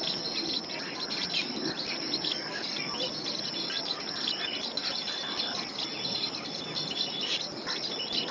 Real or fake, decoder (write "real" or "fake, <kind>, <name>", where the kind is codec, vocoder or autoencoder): real